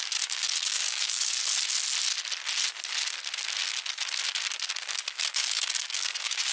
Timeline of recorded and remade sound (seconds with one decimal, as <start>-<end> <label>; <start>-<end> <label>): 0.0-1.4 remade; 1.4-4.9 recorded; 4.9-6.5 remade